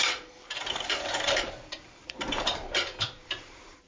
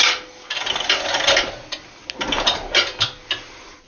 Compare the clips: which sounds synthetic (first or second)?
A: first